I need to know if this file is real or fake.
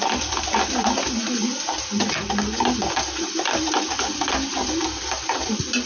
real